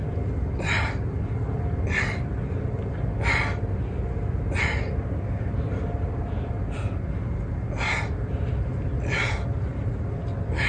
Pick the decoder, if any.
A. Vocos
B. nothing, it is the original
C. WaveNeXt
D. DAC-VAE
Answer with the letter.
B